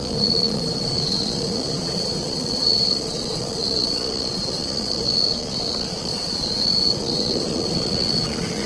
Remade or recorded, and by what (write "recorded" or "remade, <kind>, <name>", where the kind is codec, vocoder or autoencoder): remade, vocoder, Vocos